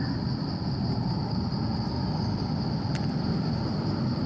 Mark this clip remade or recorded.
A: recorded